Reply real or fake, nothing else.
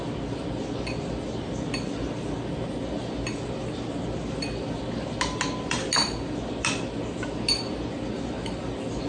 real